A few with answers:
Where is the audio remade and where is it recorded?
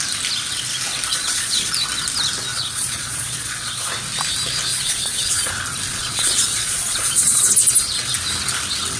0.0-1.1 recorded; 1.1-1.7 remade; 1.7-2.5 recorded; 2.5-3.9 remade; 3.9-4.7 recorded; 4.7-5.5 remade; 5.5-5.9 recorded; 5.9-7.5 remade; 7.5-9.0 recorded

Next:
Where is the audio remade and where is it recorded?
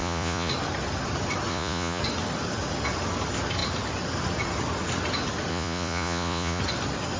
0.0-0.5 remade; 0.5-1.5 recorded; 1.5-2.0 remade; 2.0-5.5 recorded; 5.5-6.6 remade; 6.6-7.2 recorded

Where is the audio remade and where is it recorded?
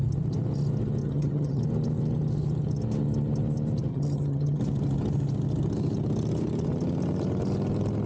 0.0-1.0 recorded; 1.0-1.6 remade; 1.6-3.9 recorded; 3.9-4.6 remade; 4.6-8.1 recorded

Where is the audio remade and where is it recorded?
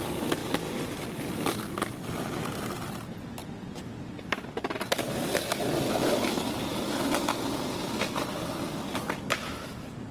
0.0-10.1 recorded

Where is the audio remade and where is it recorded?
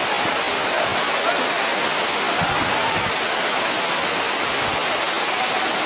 0.0-5.9 recorded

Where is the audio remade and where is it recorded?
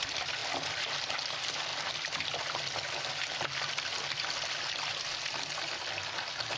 0.0-6.6 recorded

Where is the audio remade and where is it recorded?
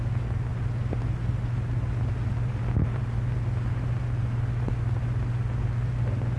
0.0-6.4 recorded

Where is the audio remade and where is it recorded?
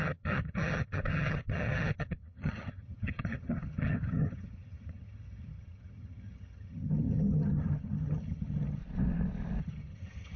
0.0-8.8 remade; 8.8-9.6 recorded; 9.6-10.4 remade